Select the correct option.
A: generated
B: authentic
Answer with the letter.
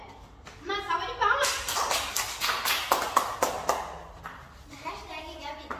B